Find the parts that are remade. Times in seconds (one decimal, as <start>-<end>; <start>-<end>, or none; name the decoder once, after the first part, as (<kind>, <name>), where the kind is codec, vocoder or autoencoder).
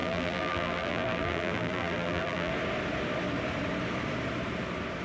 0.0-2.5 (vocoder, BigVGAN v2)